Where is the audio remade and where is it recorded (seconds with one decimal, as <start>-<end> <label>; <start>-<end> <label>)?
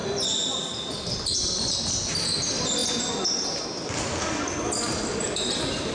0.0-5.9 recorded